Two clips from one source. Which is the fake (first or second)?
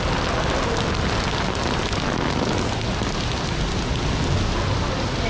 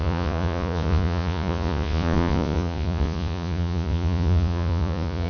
second